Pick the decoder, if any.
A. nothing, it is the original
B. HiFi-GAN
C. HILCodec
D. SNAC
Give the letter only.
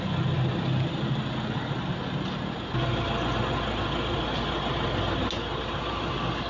A